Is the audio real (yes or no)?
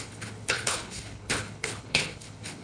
no